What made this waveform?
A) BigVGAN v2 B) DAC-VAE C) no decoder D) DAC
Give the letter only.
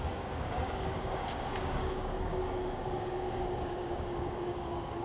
D